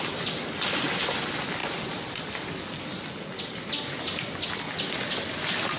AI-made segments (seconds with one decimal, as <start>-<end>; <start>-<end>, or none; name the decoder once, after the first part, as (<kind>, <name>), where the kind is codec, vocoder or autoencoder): none